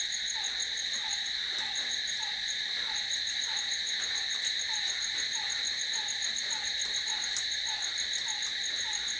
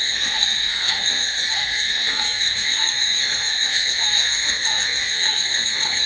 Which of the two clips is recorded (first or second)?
first